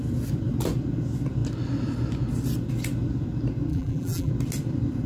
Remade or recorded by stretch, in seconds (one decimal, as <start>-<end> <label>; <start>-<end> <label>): 0.0-3.7 recorded; 3.7-4.3 remade; 4.3-5.1 recorded